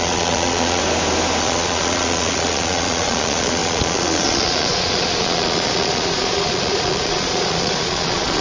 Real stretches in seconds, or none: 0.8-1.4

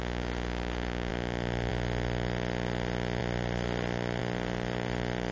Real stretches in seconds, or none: 0.0-5.3

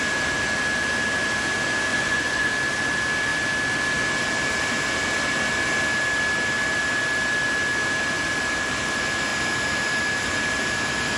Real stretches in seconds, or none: 0.0-1.9; 2.5-11.2